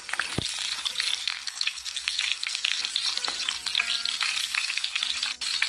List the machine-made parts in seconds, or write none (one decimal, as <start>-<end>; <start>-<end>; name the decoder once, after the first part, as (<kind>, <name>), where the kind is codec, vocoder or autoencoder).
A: 1.2-2.8 (codec, SNAC); 4.4-5.0